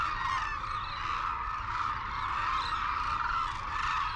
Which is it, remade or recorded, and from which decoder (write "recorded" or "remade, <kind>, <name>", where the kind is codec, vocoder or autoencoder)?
recorded